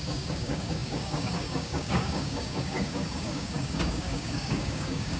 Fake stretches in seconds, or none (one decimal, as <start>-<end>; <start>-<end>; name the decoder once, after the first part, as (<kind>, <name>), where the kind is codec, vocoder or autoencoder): 0.0-5.2 (codec, DAC)

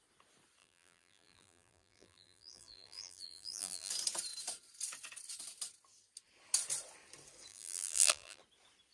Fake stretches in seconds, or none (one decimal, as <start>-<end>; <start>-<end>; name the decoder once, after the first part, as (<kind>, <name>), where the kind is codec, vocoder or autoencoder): 0.6-3.9 (vocoder, BigVGAN v2); 7.5-8.4

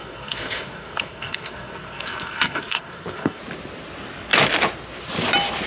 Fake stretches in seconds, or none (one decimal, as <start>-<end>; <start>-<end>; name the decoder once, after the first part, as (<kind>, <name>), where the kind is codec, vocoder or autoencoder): 0.0-3.4 (codec, SNAC)

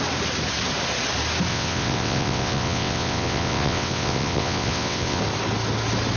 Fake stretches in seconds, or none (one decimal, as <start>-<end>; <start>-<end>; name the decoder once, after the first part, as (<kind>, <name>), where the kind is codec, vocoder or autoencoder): 1.5-5.2 (vocoder, WaveNeXt)